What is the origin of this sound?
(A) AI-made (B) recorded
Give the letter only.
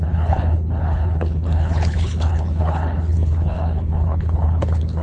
A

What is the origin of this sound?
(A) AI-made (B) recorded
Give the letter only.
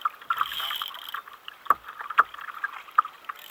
A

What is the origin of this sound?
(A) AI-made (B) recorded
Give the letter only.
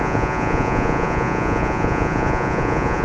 A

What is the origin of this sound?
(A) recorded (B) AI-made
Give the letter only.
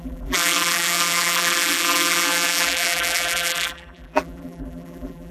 B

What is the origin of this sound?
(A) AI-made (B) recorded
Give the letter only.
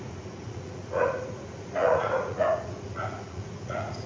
A